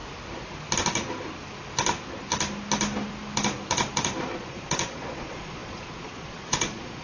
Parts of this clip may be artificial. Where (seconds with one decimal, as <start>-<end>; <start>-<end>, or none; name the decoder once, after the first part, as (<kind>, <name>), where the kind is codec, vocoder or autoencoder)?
4.2-7.0 (vocoder, Vocos)